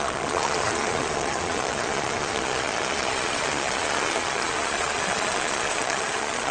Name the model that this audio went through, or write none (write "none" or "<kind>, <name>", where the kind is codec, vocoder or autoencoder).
vocoder, Vocos